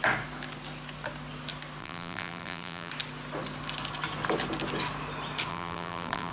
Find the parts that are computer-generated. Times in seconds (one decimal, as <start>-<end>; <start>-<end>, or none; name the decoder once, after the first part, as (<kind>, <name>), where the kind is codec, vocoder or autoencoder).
1.8-2.9 (vocoder, BigVGAN v2); 5.5-6.3